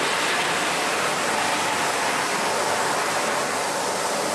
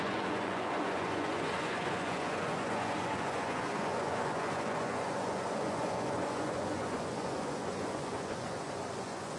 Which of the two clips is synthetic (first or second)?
second